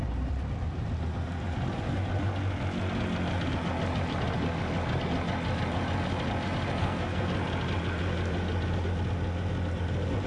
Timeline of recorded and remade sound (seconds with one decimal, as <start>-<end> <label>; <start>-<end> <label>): 0.0-6.8 recorded; 6.8-7.3 remade; 7.3-10.3 recorded